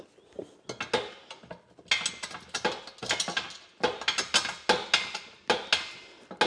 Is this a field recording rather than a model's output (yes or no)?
yes